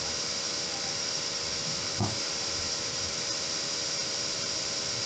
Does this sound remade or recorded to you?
remade